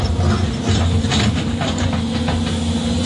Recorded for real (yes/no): yes